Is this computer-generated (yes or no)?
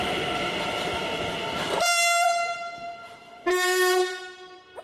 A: yes